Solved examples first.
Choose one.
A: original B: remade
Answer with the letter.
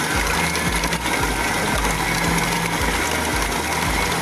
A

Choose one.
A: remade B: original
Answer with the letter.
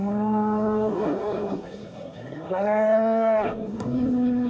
A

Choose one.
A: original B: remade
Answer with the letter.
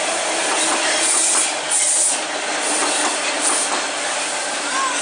A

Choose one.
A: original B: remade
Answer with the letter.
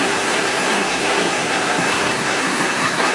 B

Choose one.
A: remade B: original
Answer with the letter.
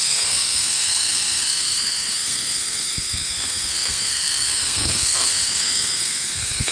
A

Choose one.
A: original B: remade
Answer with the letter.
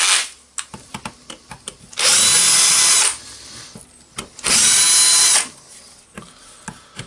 A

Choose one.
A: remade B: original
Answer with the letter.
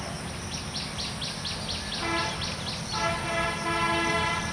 B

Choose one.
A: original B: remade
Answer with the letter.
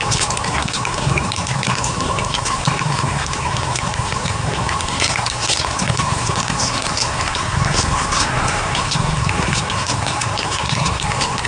B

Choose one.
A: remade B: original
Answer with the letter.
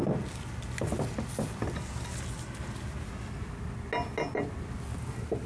B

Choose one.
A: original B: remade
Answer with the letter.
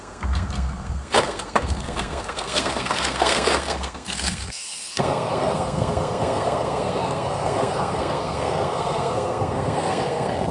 B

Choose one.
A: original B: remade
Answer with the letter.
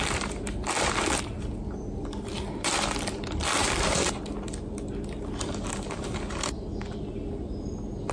A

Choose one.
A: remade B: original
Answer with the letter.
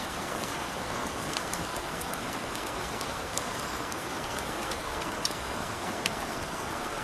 A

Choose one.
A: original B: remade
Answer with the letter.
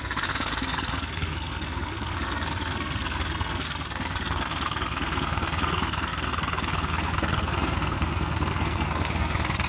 B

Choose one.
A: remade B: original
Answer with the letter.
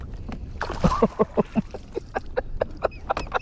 B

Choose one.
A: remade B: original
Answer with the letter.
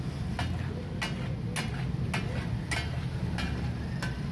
B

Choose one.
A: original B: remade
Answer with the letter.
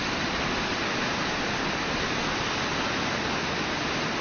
A